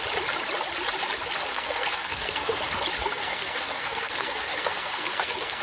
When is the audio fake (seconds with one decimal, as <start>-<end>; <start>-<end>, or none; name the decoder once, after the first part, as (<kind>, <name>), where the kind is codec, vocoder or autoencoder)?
1.5-2.6 (codec, SNAC); 3.0-5.6